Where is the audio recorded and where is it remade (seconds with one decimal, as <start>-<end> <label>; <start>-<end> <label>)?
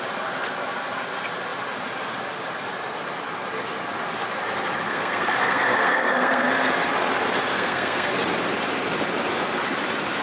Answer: 0.0-4.9 recorded; 4.9-6.5 remade; 6.5-7.5 recorded; 7.5-8.1 remade; 8.1-10.2 recorded